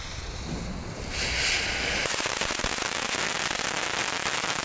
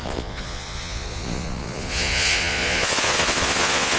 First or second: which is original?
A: first